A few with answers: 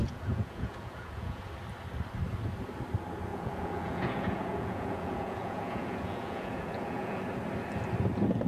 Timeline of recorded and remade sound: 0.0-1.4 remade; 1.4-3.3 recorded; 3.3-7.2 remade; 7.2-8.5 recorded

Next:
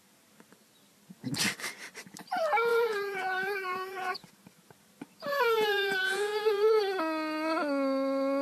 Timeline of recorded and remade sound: 0.0-2.7 recorded; 2.7-4.3 remade; 4.3-5.3 recorded; 5.3-6.8 remade; 6.8-8.4 recorded

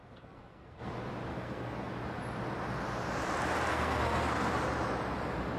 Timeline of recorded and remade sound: 0.0-0.9 remade; 0.9-1.3 recorded; 1.3-1.9 remade; 1.9-3.7 recorded; 3.7-4.5 remade; 4.5-5.6 recorded

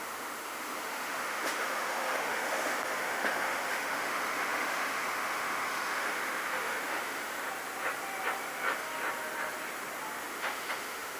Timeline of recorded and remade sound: 0.0-7.4 remade; 7.4-10.2 recorded; 10.2-11.2 remade

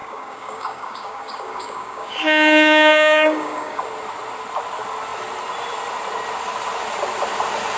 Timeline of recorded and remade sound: 0.0-3.8 remade; 3.8-7.8 recorded

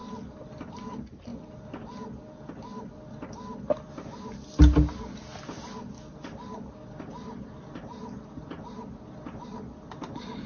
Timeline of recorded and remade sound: 0.0-10.5 recorded